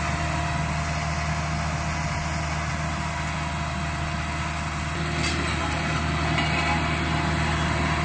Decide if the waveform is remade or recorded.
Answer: recorded